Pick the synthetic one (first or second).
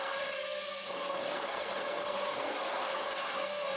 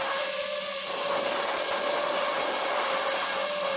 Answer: first